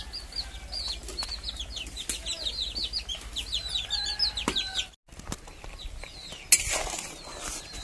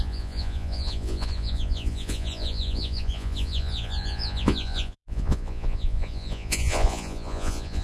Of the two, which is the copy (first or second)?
second